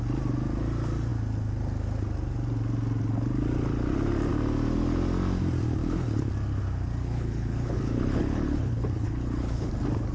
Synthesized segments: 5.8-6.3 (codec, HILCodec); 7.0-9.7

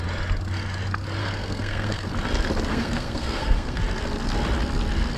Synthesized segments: 1.2-2.1 (codec, SNAC); 2.7-3.8

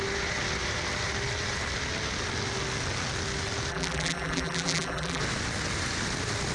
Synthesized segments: 3.7-5.2 (vocoder, BigVGAN v2)

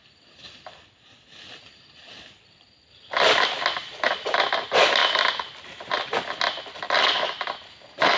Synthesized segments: none

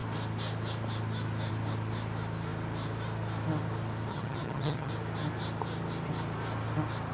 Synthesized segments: 4.1-4.9 (vocoder, HiFi-GAN)

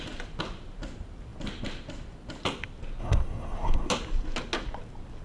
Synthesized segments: 3.0-3.9 (codec, SNAC)